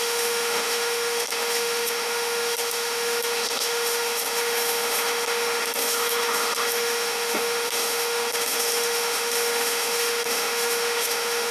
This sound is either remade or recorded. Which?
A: remade